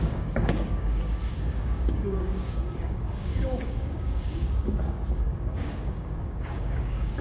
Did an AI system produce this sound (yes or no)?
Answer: yes